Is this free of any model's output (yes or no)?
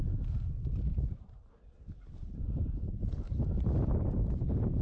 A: yes